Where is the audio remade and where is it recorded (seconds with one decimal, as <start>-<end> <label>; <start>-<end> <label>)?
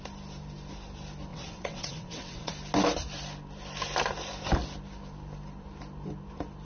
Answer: 0.0-1.3 recorded; 1.3-2.5 remade; 2.5-6.6 recorded